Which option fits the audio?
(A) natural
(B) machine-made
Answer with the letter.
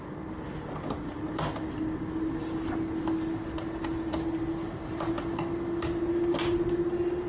A